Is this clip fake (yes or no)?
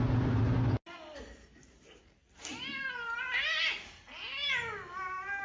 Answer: no